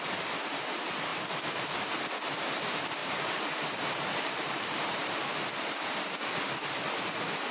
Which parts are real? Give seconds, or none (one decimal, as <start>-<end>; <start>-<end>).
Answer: 0.0-1.1; 1.7-3.0; 5.3-7.5